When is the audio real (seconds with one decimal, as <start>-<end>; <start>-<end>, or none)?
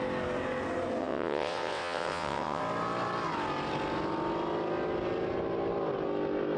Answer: 0.0-1.0; 2.6-6.6